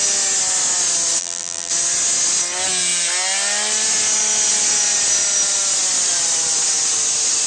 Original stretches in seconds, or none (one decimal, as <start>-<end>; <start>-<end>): 0.0-1.2; 1.7-7.5